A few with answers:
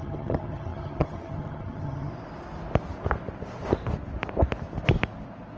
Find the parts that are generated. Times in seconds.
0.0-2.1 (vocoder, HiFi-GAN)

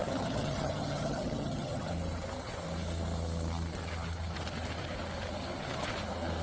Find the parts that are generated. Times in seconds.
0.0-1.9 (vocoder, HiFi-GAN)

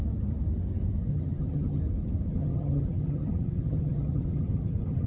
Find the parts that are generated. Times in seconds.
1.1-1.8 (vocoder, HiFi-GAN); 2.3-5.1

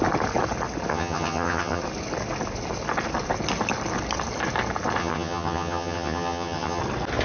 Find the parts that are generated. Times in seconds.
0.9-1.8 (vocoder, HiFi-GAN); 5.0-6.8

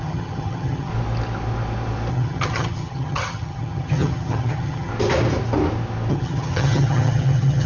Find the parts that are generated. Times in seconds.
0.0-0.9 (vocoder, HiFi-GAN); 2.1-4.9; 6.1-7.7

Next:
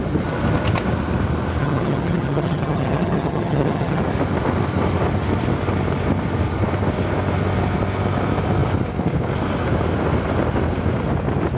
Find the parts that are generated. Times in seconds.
1.6-4.0 (vocoder, HiFi-GAN)